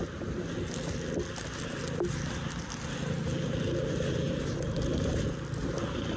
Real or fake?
real